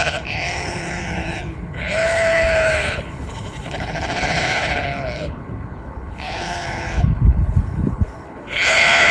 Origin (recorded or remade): remade